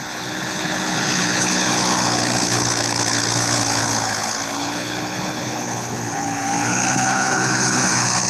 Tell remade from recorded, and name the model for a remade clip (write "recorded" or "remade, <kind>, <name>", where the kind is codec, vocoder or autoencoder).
remade, codec, HILCodec